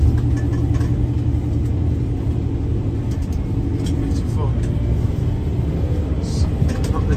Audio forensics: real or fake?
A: real